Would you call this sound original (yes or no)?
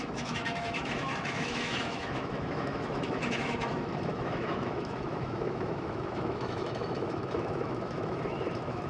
no